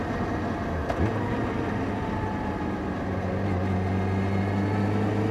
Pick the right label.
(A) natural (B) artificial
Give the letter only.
A